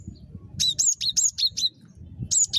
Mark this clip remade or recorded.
recorded